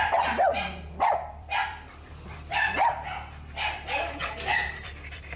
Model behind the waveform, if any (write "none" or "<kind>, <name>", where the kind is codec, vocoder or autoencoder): vocoder, BigVGAN v2